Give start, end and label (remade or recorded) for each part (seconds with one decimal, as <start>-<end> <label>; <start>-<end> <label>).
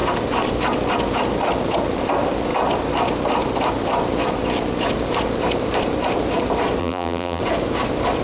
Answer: 0.0-6.8 recorded; 6.8-7.4 remade; 7.4-8.2 recorded